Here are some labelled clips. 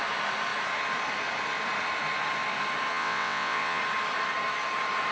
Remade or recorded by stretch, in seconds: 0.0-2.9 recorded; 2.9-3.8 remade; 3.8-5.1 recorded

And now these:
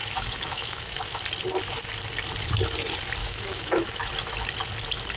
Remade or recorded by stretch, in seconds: 0.0-1.2 remade; 1.2-3.2 recorded; 3.2-4.1 remade; 4.1-5.2 recorded

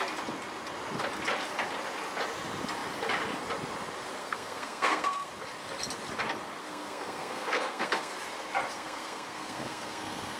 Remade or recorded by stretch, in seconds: 0.0-4.2 recorded; 4.2-5.3 remade; 5.3-6.6 recorded; 6.6-8.1 remade; 8.1-8.7 recorded; 8.7-10.4 remade

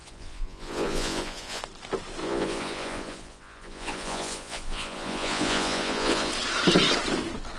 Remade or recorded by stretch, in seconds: 0.0-1.6 remade; 1.6-2.2 recorded; 2.2-6.3 remade; 6.3-7.6 recorded

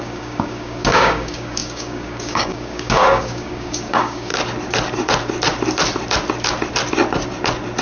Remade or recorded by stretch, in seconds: 0.0-4.3 remade; 4.3-7.8 recorded